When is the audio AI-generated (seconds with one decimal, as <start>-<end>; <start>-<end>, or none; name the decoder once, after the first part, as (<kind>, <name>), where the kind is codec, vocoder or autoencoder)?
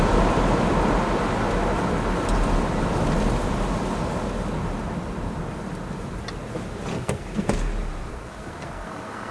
6.9-7.7 (codec, SNAC); 8.1-9.3